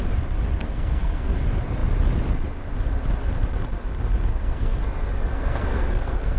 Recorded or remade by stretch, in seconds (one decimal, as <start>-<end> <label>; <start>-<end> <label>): 0.0-0.6 recorded; 0.6-1.4 remade; 1.4-4.3 recorded; 4.3-4.8 remade; 4.8-5.3 recorded; 5.3-6.4 remade

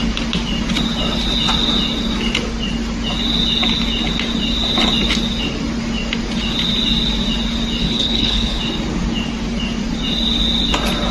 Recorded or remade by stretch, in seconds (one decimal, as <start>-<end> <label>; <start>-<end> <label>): 0.0-7.8 recorded; 7.8-8.6 remade; 8.6-11.1 recorded

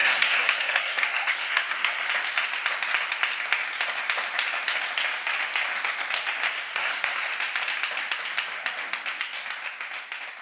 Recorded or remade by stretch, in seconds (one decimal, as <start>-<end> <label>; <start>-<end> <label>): 0.0-2.1 remade; 2.1-6.7 recorded; 6.7-7.3 remade; 7.3-10.4 recorded

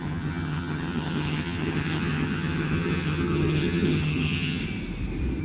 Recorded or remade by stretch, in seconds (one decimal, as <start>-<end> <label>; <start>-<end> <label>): 0.0-4.6 remade; 4.6-5.4 recorded